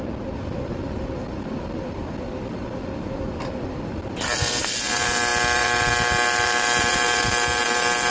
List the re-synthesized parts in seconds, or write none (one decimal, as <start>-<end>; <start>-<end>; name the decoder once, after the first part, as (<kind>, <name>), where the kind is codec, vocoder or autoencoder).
none